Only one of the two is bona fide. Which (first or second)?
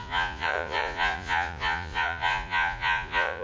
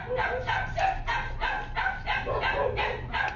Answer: second